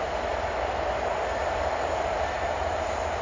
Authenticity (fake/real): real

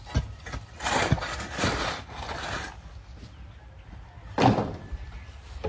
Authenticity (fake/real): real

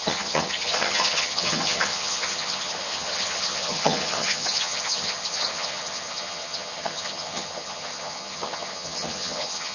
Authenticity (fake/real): fake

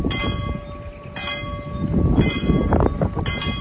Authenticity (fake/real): real